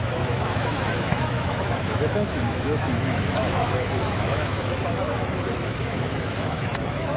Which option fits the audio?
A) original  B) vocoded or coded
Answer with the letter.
B